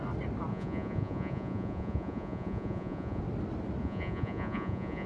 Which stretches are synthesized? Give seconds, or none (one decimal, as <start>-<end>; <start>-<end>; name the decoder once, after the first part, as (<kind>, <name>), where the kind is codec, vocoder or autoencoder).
0.5-3.2 (vocoder, Vocos); 3.8-5.1